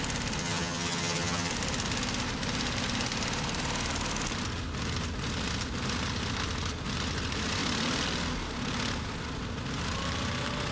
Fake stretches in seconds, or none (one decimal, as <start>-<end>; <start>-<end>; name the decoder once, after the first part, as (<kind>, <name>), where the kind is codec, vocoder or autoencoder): 0.4-1.5 (vocoder, HiFi-GAN)